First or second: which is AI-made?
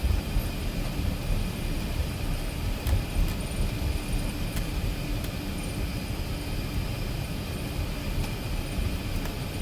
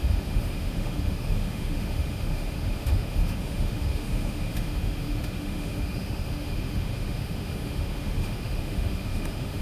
second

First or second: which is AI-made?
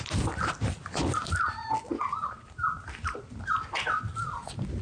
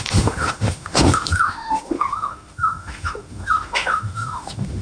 second